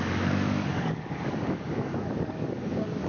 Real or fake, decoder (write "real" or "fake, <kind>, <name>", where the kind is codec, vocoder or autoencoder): fake, codec, DAC